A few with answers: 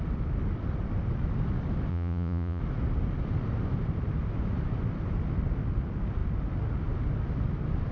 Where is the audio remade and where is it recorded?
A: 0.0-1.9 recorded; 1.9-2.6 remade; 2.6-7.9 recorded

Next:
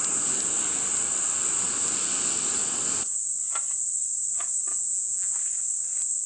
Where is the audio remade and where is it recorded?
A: 0.0-4.7 recorded; 4.7-5.3 remade; 5.3-6.3 recorded

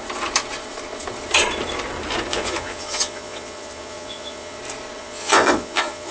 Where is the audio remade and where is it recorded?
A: 0.0-2.3 recorded; 2.3-4.6 remade; 4.6-5.0 recorded; 5.0-6.1 remade

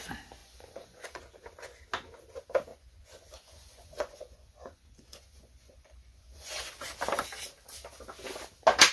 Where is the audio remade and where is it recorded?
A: 0.0-0.4 recorded; 0.4-1.2 remade; 1.2-2.7 recorded; 2.7-6.7 remade; 6.7-8.9 recorded